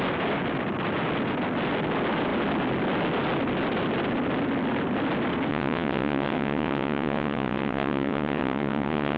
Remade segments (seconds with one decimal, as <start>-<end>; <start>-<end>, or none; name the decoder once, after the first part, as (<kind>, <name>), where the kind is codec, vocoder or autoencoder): 5.5-9.2 (vocoder, WaveNeXt)

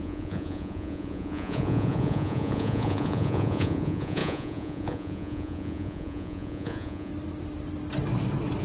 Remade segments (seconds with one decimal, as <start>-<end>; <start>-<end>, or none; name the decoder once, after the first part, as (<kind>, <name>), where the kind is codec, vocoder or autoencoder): 0.0-7.1 (vocoder, Vocos)